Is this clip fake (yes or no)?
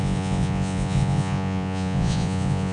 yes